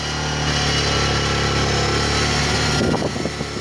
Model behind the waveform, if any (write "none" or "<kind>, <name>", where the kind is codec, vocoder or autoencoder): none